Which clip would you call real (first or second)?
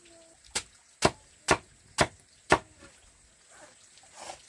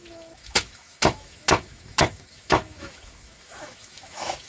first